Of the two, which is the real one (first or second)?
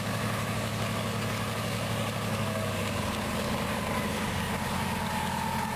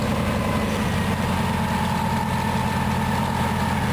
second